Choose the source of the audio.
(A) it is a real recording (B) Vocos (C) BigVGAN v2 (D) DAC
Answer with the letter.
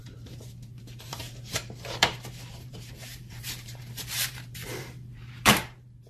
C